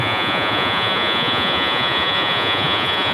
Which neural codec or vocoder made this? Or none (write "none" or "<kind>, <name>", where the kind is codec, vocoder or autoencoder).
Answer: vocoder, Vocos